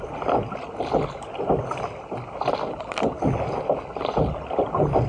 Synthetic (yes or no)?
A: no